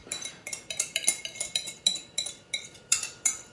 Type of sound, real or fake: fake